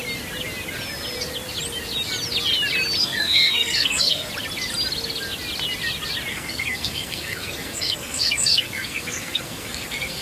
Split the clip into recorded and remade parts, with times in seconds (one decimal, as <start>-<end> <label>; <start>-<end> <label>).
0.0-3.0 recorded; 3.0-4.3 remade; 4.3-6.3 recorded; 6.3-10.2 remade